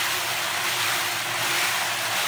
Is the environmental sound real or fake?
real